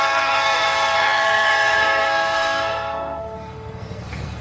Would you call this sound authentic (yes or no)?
no